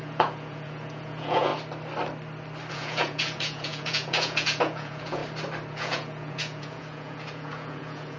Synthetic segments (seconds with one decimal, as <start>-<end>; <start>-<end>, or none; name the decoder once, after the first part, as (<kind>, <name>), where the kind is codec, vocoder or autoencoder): 0.0-1.5 (vocoder, Vocos); 2.7-5.2; 5.7-8.2